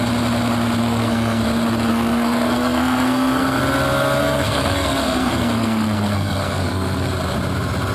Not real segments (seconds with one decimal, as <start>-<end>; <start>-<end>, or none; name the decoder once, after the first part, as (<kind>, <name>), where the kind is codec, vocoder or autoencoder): 0.8-1.4 (codec, SNAC); 1.9-3.6; 4.2-7.1